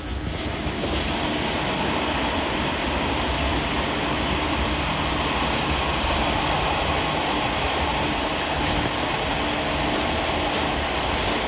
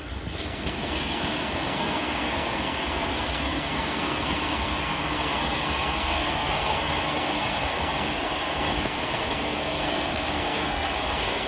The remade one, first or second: second